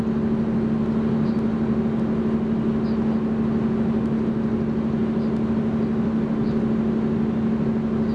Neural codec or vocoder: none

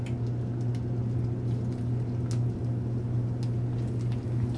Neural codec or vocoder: none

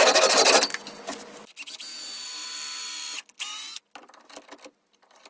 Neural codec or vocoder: none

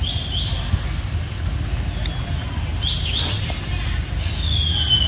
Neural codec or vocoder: none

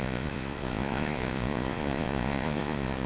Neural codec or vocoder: vocoder, Vocos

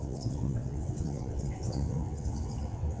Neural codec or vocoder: vocoder, WaveNeXt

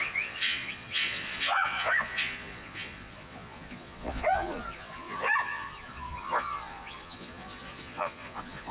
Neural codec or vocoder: vocoder, Vocos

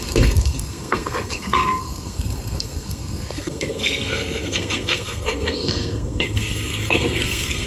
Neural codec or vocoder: codec, SNAC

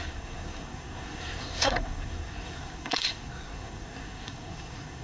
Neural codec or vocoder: codec, SNAC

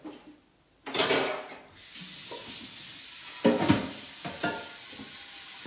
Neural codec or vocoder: none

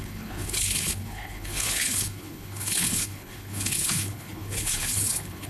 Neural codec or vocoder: codec, HILCodec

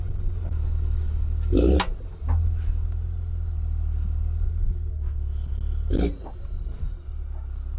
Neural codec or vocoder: none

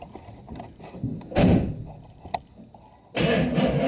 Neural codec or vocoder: none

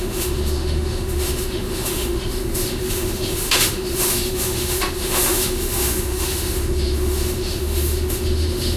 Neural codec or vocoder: autoencoder, DAC-VAE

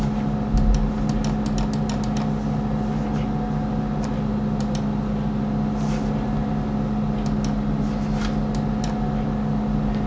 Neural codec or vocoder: none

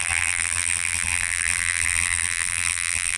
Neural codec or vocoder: vocoder, BigVGAN v2